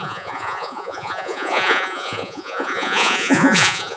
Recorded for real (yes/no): no